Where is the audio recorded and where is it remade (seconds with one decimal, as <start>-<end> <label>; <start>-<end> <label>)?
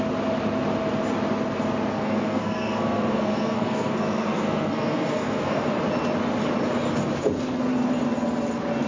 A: 0.0-1.9 recorded; 1.9-5.8 remade; 5.8-8.9 recorded